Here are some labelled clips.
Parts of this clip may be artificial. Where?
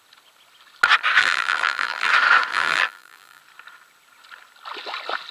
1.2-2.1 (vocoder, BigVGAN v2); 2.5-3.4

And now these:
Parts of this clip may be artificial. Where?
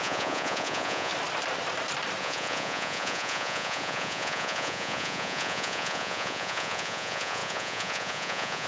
0.0-1.1 (vocoder, Vocos); 2.2-8.7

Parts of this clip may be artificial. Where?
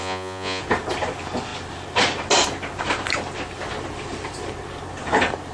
0.0-0.6 (vocoder, Vocos)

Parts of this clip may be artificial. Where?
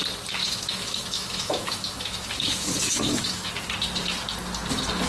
0.4-3.5 (autoencoder, DAC-VAE)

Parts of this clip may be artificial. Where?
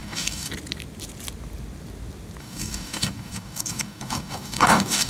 0.0-0.5 (codec, DAC); 2.4-5.1